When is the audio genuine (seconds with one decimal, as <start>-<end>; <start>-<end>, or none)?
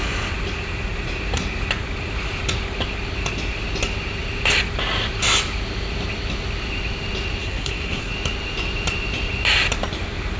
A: 0.0-7.4; 8.1-10.4